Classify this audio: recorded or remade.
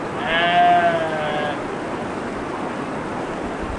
recorded